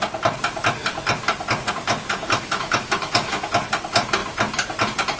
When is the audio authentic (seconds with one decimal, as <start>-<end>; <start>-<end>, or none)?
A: 0.0-2.2; 3.5-5.2

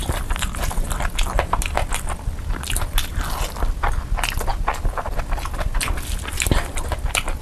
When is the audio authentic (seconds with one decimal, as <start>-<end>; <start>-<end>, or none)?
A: 0.0-7.4

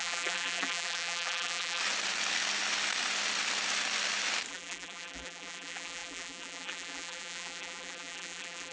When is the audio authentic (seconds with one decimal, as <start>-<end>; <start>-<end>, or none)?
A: 1.8-4.5

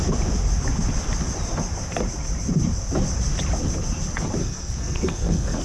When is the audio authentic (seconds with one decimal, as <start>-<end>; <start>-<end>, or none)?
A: 0.0-4.4

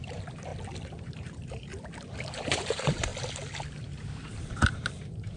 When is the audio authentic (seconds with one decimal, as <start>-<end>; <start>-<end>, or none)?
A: 0.5-1.1; 1.7-2.3; 3.1-3.8